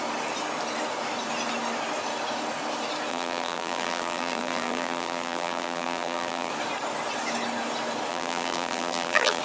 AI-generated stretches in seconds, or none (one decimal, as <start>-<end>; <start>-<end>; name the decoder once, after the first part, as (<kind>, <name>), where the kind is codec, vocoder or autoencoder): 3.1-6.5 (vocoder, BigVGAN v2); 8.1-9.4

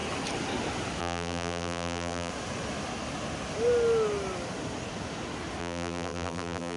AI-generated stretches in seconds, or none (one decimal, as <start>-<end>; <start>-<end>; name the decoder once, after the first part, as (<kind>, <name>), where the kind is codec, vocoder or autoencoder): 1.0-2.3 (vocoder, BigVGAN v2); 5.6-6.8

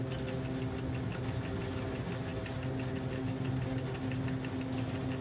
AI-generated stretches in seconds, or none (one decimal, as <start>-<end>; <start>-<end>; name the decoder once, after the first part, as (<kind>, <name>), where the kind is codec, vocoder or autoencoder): none

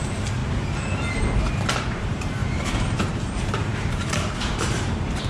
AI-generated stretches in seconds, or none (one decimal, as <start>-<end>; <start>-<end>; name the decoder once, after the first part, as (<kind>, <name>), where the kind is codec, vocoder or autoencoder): 0.0-0.4 (vocoder, BigVGAN v2); 1.4-5.3

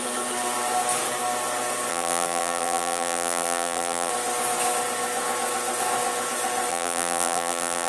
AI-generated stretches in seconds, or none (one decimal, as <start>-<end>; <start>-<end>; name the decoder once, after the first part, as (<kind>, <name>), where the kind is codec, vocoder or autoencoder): 1.9-4.1 (vocoder, BigVGAN v2); 6.7-7.9

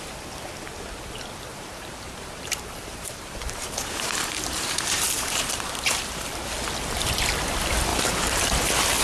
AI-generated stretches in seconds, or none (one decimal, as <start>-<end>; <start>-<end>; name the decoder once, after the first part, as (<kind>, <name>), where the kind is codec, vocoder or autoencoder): 1.5-6.3 (vocoder, BigVGAN v2); 7.9-8.4

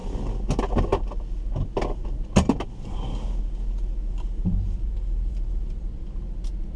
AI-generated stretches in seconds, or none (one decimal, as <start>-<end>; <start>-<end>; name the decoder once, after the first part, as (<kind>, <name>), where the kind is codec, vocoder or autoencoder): 4.1-5.9 (vocoder, BigVGAN v2)